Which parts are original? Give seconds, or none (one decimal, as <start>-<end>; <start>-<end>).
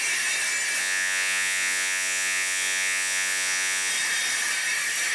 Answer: 0.0-0.8; 3.9-5.1